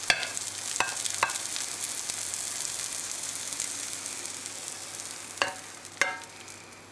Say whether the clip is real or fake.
real